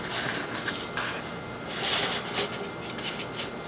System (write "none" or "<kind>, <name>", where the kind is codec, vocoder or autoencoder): none